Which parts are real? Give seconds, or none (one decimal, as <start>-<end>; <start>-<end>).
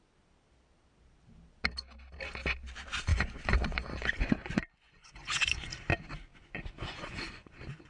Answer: 0.0-3.1; 5.7-6.3